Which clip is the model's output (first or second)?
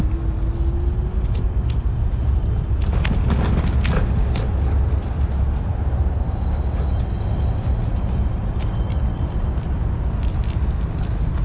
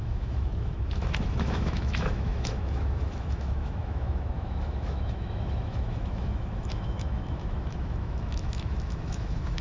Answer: second